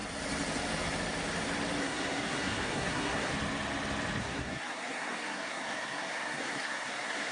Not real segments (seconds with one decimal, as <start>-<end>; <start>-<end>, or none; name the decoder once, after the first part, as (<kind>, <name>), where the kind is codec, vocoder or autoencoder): 1.8-3.3 (codec, SNAC); 4.2-7.3